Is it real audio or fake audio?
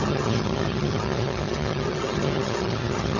fake